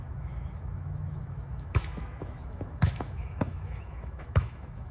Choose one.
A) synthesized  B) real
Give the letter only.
A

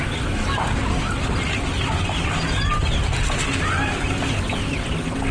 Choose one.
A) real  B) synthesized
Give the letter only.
A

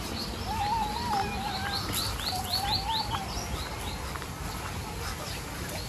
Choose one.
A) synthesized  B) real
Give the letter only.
B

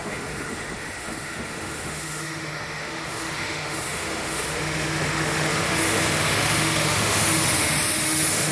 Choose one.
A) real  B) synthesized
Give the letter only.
B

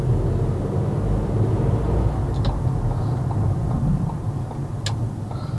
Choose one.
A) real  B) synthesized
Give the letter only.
A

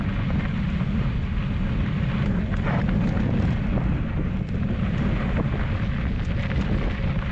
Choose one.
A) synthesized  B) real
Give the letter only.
B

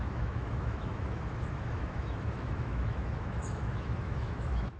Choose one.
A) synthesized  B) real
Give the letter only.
A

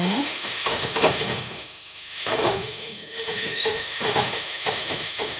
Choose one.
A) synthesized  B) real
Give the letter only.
A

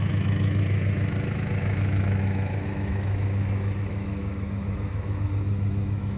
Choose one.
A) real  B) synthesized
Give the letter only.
B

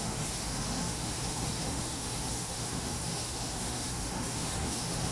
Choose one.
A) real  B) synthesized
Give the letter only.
B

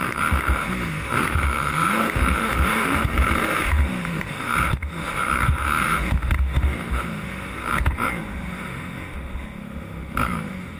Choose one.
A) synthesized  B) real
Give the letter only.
A